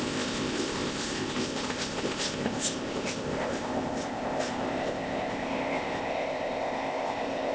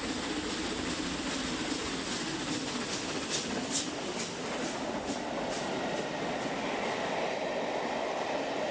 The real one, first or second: second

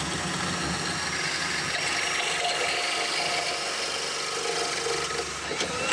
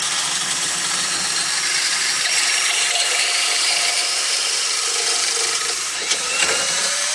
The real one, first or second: first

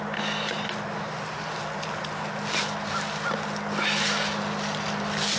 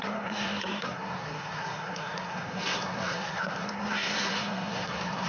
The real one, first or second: first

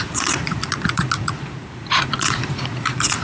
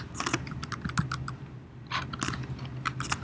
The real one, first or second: second